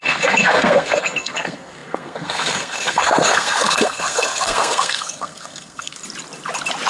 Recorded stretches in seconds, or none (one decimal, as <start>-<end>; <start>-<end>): 6.0-6.9